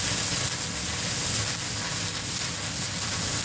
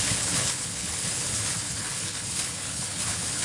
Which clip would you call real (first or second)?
first